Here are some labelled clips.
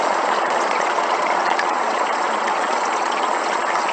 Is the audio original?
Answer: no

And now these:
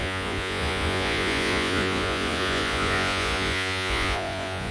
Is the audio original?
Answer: no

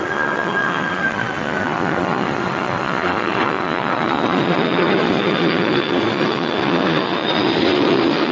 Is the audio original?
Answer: no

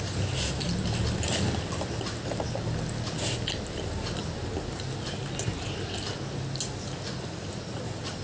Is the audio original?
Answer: yes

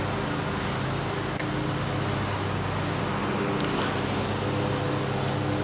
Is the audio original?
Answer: yes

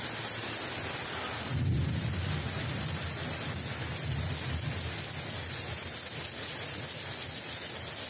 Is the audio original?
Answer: yes